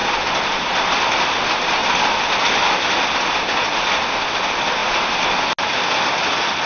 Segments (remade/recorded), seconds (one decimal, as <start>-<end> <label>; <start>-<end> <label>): 0.0-1.8 recorded; 1.8-2.4 remade; 2.4-6.7 recorded